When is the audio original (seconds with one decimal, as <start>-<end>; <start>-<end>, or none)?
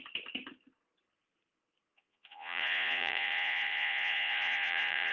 0.0-1.9